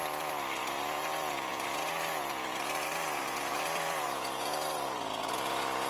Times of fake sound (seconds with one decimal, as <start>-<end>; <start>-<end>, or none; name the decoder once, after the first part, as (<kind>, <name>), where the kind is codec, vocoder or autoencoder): 0.0-5.9 (vocoder, Vocos)